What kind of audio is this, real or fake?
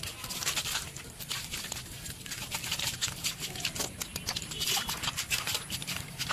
fake